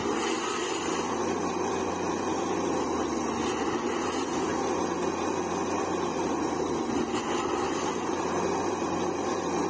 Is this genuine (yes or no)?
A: no